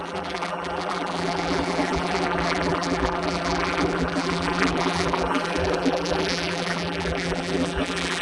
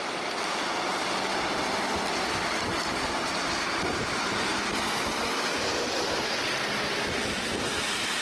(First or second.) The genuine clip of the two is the second